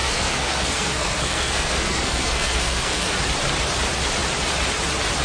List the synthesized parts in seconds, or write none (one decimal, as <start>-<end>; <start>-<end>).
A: 0.0-3.1